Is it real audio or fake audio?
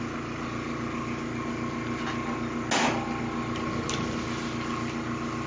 real